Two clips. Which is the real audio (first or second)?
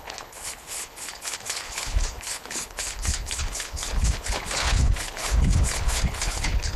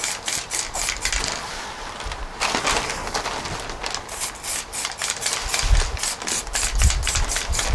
second